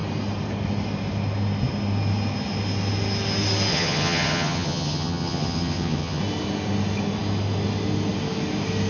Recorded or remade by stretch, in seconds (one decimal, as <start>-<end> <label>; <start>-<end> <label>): 0.0-3.7 recorded; 3.7-6.2 remade; 6.2-8.9 recorded